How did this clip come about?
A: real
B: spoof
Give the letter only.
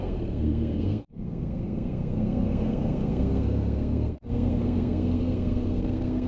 B